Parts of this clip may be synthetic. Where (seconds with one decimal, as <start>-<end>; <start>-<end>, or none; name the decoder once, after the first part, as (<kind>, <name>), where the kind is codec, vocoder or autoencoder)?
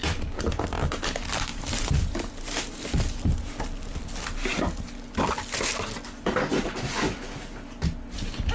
1.5-2.3 (vocoder, BigVGAN v2)